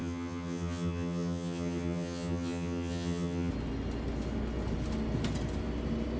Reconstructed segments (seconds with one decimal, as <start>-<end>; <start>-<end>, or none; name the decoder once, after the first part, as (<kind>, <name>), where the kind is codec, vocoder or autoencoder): 0.0-3.5 (vocoder, HiFi-GAN)